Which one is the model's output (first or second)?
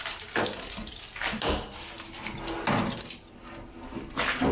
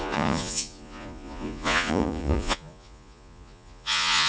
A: second